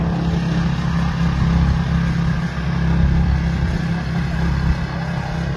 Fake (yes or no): no